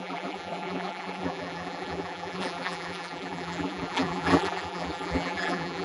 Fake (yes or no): yes